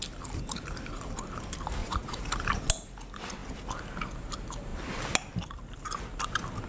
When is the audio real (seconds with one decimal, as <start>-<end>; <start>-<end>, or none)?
0.0-1.8; 2.3-6.7